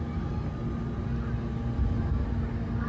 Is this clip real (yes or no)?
yes